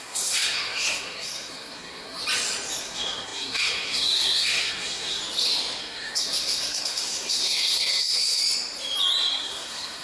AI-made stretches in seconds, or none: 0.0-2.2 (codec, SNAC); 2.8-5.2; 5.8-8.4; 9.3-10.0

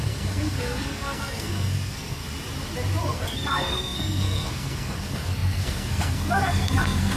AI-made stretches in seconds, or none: 0.0-2.2 (codec, SNAC); 3.0-7.2

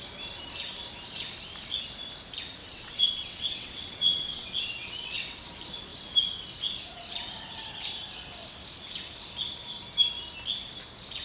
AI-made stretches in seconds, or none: 2.6-5.5 (vocoder, WaveNeXt)

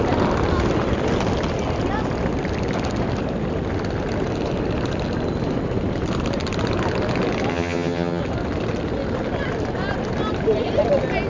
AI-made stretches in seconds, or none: 7.5-8.2 (vocoder, HiFi-GAN)